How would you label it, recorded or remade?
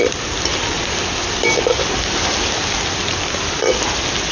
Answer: recorded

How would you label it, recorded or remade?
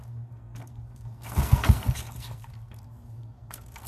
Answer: remade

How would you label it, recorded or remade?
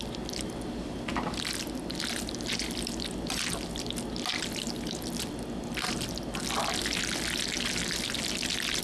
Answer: recorded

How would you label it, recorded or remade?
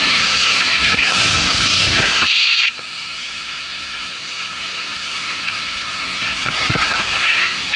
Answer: remade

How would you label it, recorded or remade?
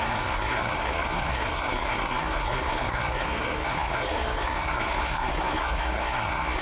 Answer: remade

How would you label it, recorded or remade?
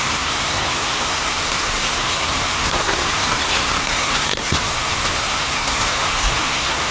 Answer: remade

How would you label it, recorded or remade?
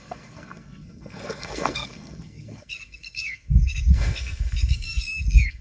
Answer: remade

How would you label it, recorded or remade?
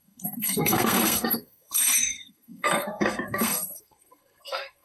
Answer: remade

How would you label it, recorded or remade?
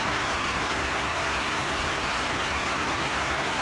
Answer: remade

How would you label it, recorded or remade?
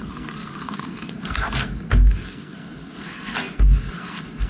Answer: remade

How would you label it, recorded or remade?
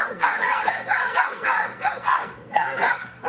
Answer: remade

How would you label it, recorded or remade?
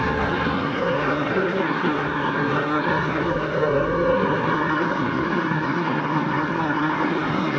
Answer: remade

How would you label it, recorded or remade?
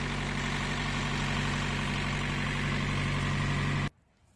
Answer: recorded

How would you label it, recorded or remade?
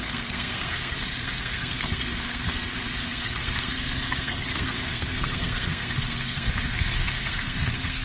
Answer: remade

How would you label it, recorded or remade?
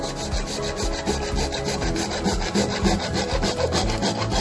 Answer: recorded